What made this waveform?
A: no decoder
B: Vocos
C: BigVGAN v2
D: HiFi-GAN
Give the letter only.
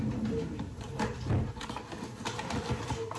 A